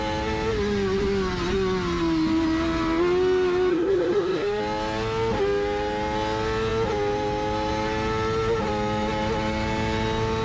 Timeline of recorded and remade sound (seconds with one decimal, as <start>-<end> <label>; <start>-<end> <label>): 0.0-3.7 recorded; 3.7-4.6 remade; 4.6-10.4 recorded